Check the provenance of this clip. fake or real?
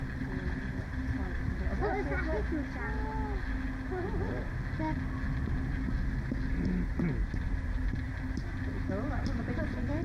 real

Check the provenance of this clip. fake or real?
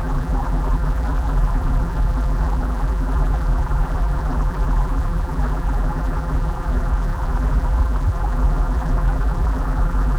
fake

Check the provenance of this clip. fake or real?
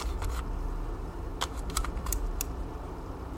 real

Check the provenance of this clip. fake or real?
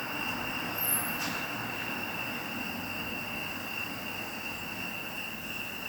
real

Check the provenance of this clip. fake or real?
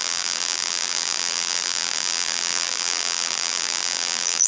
fake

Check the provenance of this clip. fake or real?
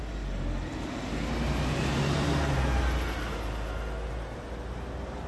real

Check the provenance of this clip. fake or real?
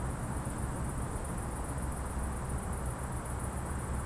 real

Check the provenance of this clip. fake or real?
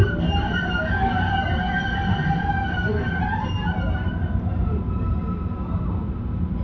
real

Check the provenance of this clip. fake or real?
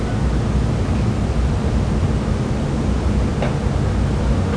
real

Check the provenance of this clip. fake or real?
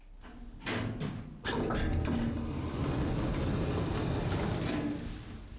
real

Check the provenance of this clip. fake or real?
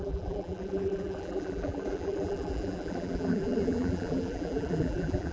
fake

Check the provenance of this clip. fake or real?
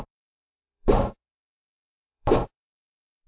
fake